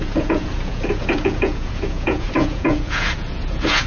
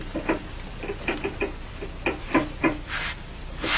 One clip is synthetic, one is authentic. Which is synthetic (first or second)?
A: first